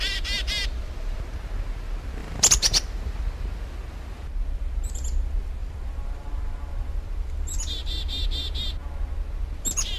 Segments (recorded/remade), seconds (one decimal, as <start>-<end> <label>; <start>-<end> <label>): 0.0-2.2 recorded; 2.2-3.2 remade; 3.2-5.6 recorded; 5.6-8.2 remade; 8.2-10.0 recorded